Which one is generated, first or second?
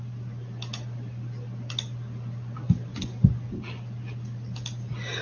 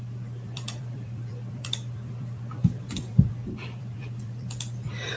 second